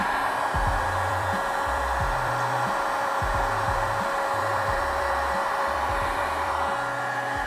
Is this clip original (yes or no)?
no